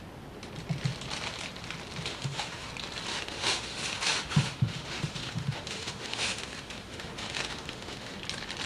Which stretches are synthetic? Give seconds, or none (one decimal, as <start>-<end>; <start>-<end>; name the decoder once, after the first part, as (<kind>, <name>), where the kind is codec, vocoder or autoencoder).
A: 2.1-2.7 (autoencoder, DAC-VAE); 3.1-8.2